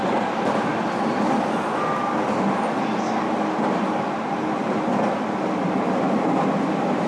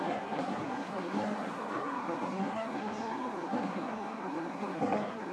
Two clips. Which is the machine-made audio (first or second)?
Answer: second